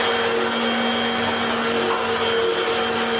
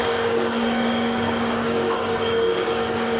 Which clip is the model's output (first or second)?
second